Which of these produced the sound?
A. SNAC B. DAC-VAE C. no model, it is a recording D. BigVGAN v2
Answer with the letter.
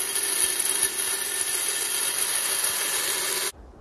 C